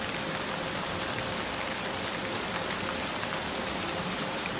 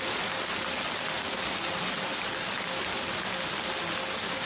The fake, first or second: first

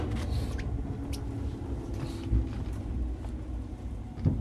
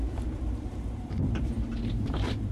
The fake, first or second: second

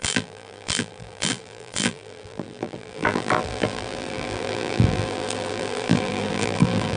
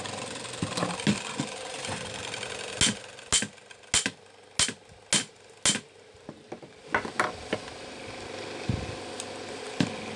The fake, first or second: first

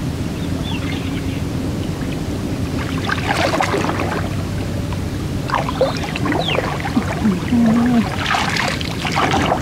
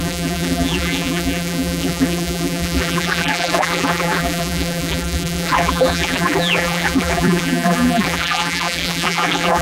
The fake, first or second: second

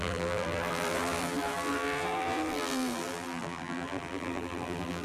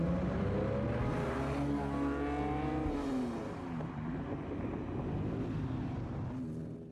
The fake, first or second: first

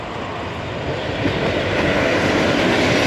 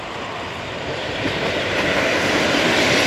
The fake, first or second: second